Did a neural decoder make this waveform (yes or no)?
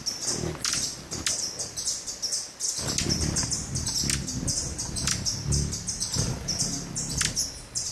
no